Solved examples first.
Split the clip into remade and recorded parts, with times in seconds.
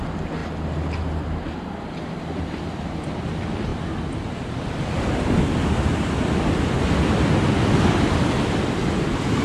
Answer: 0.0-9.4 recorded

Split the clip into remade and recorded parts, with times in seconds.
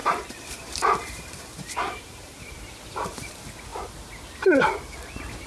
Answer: 0.0-3.3 remade; 3.3-5.5 recorded